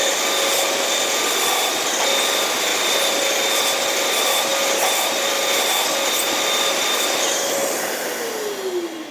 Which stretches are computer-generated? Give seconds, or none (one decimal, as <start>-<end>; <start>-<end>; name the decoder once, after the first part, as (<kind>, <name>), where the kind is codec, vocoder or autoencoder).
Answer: none